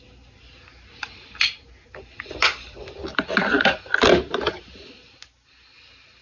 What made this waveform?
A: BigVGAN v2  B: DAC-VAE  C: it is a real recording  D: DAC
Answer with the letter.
C